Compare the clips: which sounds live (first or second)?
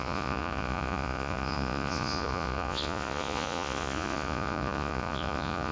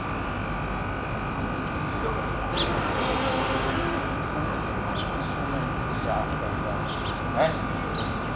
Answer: second